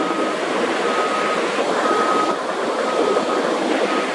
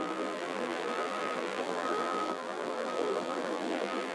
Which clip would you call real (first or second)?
first